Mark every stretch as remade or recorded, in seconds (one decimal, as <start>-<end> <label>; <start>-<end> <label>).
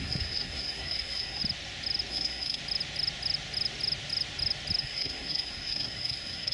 0.0-1.4 remade; 1.4-2.1 recorded; 2.1-2.6 remade; 2.6-4.8 recorded; 4.8-6.5 remade